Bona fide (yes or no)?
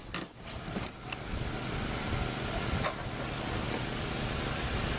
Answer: yes